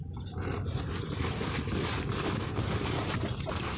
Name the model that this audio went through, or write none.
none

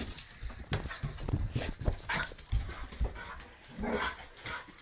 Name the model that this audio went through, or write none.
none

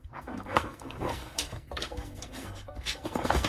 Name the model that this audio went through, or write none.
codec, SNAC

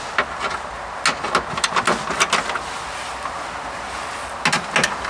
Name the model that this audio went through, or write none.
none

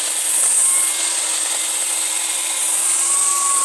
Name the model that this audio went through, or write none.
none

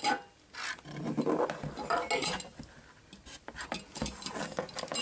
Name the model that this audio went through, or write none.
none